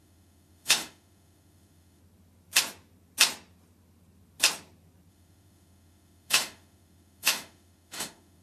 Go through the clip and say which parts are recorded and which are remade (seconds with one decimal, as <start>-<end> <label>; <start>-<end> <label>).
0.0-2.0 remade; 2.0-5.1 recorded; 5.1-8.4 remade